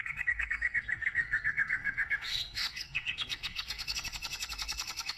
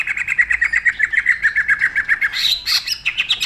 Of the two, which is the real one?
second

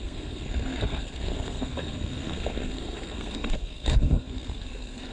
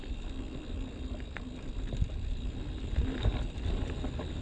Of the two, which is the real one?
second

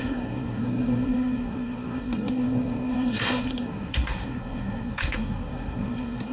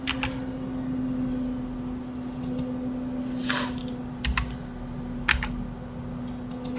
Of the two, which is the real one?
second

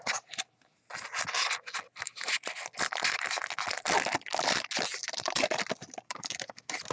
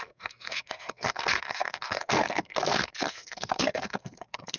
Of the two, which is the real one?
first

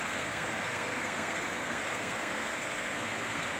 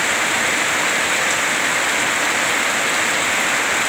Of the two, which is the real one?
second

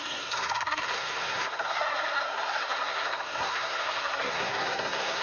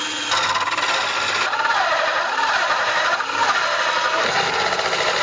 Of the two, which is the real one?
second